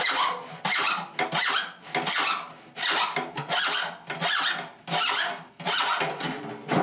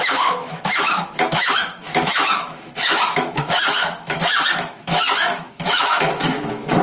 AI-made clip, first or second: second